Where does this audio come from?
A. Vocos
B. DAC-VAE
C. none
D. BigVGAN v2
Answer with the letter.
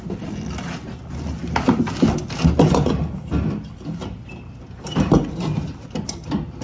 C